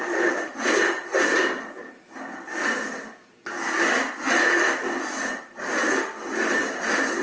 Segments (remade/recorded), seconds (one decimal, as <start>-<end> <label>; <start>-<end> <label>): 0.0-7.2 recorded